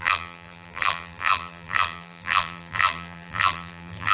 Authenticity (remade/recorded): remade